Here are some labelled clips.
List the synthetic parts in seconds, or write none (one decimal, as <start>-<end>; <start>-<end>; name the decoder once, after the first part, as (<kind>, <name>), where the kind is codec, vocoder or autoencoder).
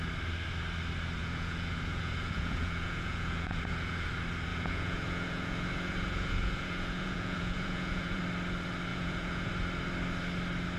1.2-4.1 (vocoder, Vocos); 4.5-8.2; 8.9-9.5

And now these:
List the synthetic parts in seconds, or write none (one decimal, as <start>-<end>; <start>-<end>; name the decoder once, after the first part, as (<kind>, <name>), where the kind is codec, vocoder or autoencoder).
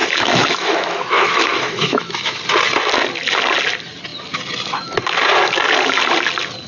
0.0-2.4 (autoencoder, DAC-VAE)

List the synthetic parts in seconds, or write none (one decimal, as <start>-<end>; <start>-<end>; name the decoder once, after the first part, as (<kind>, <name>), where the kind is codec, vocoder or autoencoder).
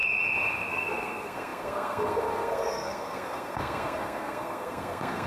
0.7-5.3 (codec, SNAC)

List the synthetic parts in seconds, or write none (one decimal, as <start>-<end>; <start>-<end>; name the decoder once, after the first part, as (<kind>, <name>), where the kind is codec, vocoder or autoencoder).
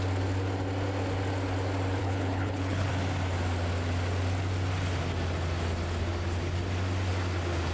2.0-2.9 (codec, HILCodec)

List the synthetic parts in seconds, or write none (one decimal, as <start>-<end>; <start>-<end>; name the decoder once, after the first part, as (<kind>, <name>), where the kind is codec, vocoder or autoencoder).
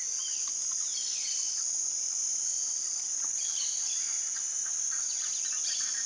none